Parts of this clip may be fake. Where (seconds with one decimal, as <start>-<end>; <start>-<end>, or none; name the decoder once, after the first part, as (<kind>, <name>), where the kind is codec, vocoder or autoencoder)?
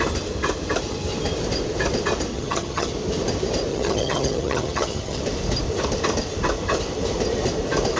2.3-2.9 (vocoder, HiFi-GAN); 3.7-5.2